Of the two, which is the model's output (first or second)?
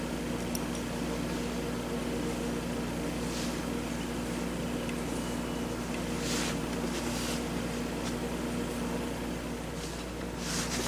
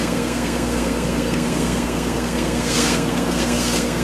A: second